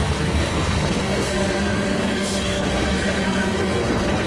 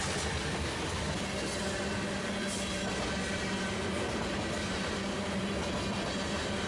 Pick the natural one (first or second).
second